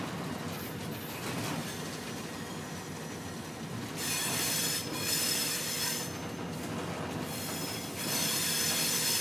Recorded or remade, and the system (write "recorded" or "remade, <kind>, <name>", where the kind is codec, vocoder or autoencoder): recorded